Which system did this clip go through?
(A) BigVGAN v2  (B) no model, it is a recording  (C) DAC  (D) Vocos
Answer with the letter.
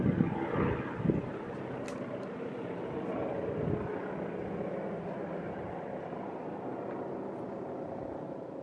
B